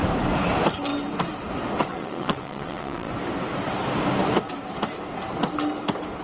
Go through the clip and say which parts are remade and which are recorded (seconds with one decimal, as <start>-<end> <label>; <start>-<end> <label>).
0.0-1.9 recorded; 1.9-3.1 remade; 3.1-6.2 recorded